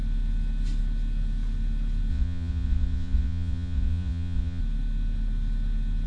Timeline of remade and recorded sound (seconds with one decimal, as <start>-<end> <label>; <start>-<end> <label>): 0.0-2.1 recorded; 2.1-4.6 remade; 4.6-6.1 recorded